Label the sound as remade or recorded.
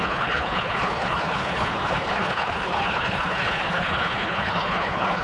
remade